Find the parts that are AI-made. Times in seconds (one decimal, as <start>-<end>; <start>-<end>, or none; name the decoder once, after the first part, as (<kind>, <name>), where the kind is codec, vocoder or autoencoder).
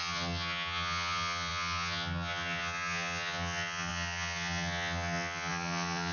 0.0-6.1 (vocoder, HiFi-GAN)